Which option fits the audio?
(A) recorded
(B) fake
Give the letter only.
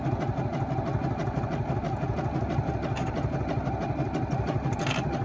A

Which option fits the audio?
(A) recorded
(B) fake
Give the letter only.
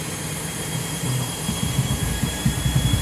B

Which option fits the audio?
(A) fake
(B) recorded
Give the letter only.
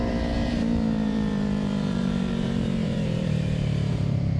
A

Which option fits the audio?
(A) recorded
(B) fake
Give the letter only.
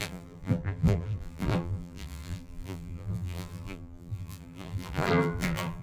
B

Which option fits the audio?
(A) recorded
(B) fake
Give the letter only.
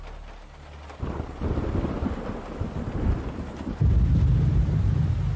B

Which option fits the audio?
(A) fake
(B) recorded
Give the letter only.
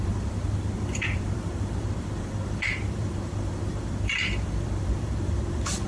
A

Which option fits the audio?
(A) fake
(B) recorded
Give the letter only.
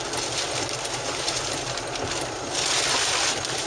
B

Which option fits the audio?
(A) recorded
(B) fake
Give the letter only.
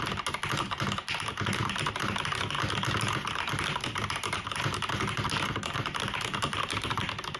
A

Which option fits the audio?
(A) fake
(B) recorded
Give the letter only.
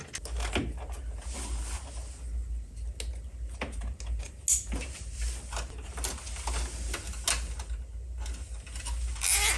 B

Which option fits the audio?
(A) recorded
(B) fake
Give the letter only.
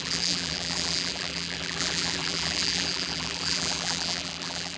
B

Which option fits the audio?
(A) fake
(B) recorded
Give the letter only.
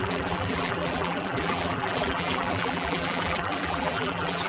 A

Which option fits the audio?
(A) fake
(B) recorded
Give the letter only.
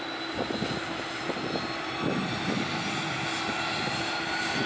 B